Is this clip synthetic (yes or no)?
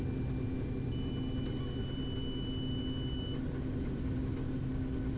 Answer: no